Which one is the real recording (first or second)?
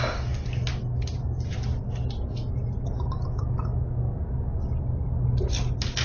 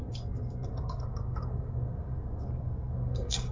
first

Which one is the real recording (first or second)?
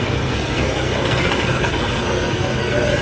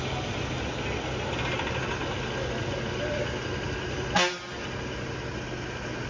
second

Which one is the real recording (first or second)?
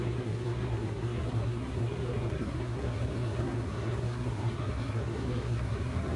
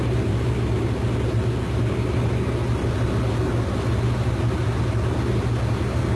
second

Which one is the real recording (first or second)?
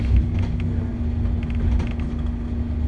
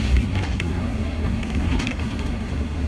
first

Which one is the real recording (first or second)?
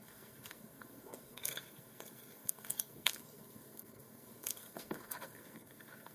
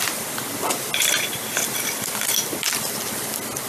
second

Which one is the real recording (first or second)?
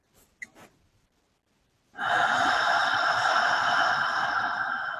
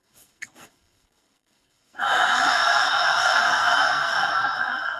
first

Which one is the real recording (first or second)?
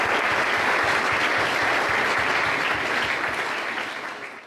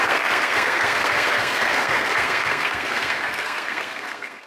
first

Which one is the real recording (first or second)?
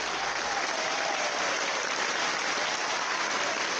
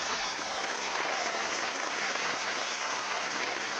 first